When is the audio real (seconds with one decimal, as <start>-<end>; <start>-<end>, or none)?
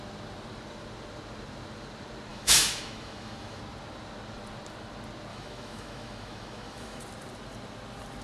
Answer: 0.0-2.3; 3.6-5.3; 7.0-8.2